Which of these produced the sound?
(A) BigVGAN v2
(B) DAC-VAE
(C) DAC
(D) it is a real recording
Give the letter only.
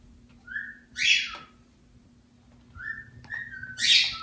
D